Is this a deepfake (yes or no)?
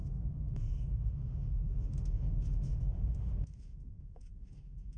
yes